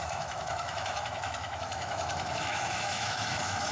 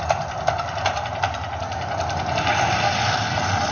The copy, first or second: first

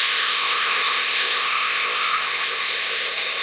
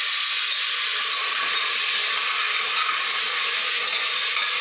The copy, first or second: first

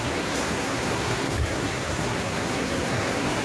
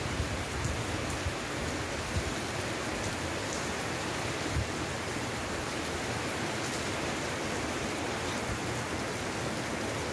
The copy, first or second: first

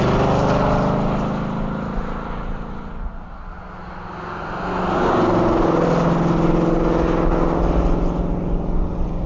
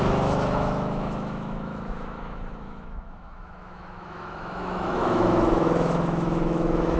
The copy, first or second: second